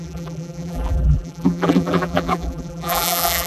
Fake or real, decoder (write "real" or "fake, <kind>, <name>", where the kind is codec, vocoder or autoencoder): fake, vocoder, BigVGAN v2